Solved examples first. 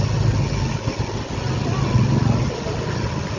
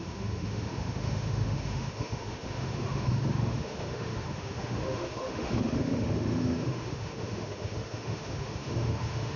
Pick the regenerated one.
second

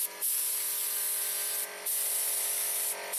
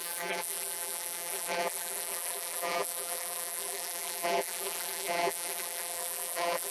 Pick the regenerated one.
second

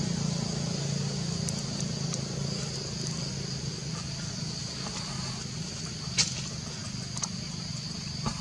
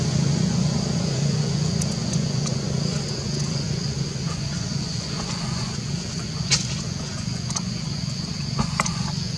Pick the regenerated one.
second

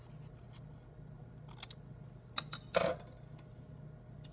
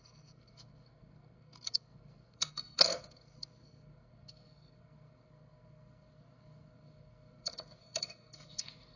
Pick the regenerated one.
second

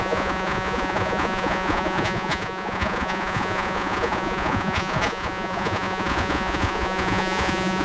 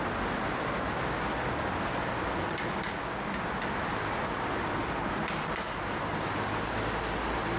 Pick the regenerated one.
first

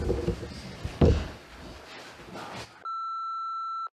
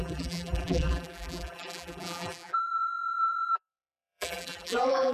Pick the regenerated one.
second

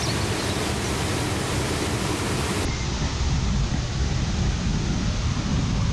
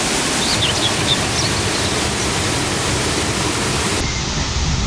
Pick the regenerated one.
second